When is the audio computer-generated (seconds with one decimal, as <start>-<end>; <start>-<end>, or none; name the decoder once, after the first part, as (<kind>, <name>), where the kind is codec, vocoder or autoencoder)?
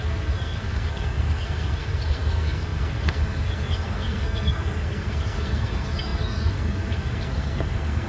0.0-8.1 (codec, SNAC)